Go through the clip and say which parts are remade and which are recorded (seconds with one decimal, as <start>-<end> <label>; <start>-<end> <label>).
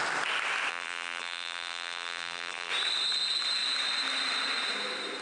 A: 0.0-0.7 recorded; 0.7-2.7 remade; 2.7-5.2 recorded